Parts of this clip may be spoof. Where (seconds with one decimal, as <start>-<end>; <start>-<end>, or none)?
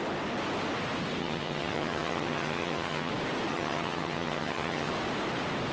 1.2-3.1; 3.5-4.9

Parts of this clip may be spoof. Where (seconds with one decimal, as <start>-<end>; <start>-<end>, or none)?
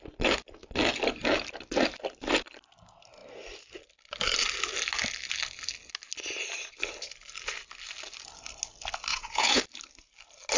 9.1-9.6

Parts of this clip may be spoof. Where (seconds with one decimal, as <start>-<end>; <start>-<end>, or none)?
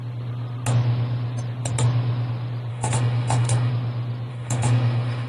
2.7-3.7; 4.3-5.3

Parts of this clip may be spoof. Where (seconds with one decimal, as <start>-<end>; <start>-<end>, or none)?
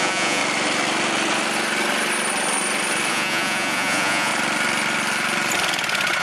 0.0-0.4; 3.1-4.3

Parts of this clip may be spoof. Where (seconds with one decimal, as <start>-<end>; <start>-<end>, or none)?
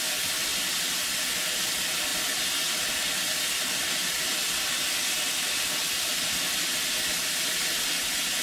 none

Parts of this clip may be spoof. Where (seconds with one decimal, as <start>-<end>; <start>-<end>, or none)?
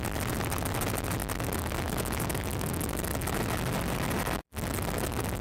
none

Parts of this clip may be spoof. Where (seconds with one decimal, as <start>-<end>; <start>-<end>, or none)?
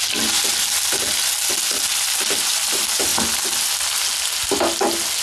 none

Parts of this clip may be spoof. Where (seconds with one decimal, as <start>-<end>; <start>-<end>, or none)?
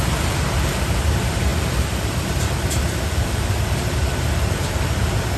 0.0-5.4